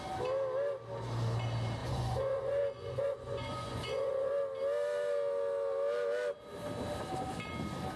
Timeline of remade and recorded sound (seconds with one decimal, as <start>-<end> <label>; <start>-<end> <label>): 0.0-1.8 recorded; 1.8-4.4 remade; 4.4-8.0 recorded